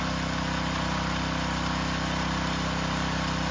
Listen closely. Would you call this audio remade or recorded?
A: recorded